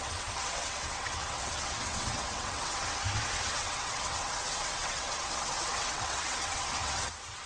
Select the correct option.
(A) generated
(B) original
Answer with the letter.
A